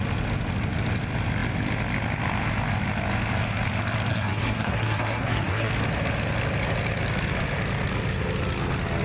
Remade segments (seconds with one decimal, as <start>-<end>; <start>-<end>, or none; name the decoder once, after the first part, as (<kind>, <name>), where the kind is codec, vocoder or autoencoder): 4.1-5.7 (codec, SNAC)